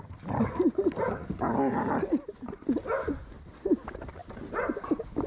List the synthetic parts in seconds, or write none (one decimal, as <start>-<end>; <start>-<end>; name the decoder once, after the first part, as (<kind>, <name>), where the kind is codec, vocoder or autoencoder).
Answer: none